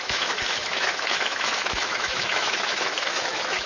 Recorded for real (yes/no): no